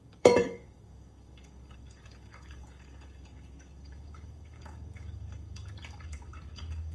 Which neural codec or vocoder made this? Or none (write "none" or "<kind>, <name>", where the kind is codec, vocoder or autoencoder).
codec, DAC